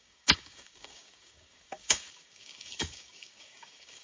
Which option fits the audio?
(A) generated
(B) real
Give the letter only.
A